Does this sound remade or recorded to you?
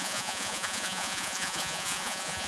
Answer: remade